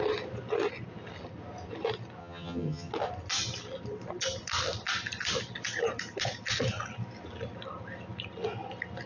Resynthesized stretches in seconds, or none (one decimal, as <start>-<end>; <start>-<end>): 2.2-2.9